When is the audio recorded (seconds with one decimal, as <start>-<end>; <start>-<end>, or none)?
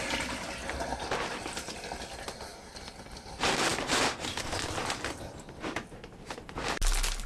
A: 0.0-7.3